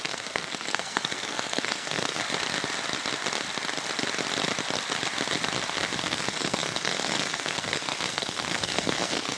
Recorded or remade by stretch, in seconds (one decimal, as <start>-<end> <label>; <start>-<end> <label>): 0.0-2.2 remade; 2.2-6.0 recorded; 6.0-9.4 remade